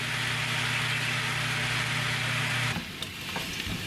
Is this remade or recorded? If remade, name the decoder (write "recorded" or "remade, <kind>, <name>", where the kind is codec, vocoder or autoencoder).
recorded